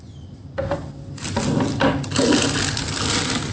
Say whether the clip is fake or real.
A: real